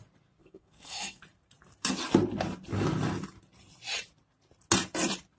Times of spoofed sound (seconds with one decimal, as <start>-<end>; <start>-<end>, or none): 0.4-1.2